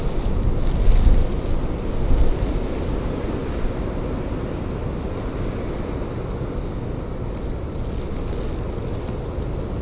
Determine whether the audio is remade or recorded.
recorded